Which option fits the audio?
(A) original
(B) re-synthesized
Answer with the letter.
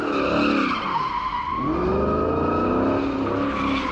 A